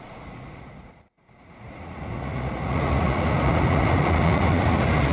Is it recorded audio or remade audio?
remade